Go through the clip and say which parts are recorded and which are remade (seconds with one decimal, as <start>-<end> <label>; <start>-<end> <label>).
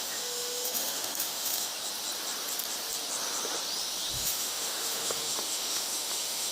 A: 0.0-1.7 remade; 1.7-4.1 recorded; 4.1-6.5 remade